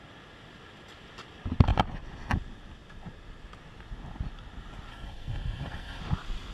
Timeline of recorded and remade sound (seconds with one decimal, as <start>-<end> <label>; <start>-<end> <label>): 0.0-4.9 recorded; 4.9-6.0 remade; 6.0-6.5 recorded

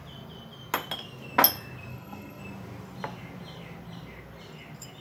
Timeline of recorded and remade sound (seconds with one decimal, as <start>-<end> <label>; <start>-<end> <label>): 0.0-1.9 recorded; 1.9-2.4 remade; 2.4-5.0 recorded

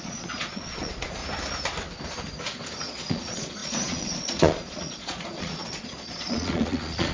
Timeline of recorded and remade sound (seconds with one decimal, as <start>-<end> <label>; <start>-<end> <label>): 0.0-1.2 remade; 1.2-2.8 recorded; 2.8-7.1 remade

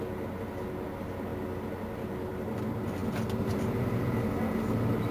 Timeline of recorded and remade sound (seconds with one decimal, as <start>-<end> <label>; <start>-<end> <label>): 0.0-3.0 recorded; 3.0-4.2 remade; 4.2-5.1 recorded

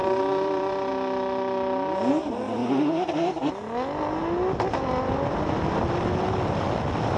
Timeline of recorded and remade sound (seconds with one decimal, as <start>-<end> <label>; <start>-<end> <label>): 0.0-0.9 remade; 0.9-7.2 recorded